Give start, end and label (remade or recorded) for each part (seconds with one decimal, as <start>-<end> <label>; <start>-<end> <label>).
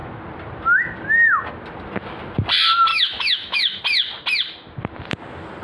0.0-2.9 recorded; 2.9-3.8 remade; 3.8-5.6 recorded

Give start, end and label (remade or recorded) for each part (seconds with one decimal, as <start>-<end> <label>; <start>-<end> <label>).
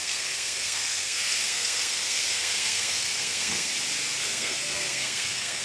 0.0-3.7 remade; 3.7-4.2 recorded; 4.2-5.6 remade